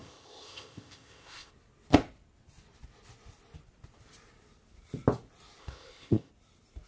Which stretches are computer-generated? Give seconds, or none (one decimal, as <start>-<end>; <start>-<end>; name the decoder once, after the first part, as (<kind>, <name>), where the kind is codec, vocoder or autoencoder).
0.0-1.5 (codec, ZipCodec); 5.6-6.3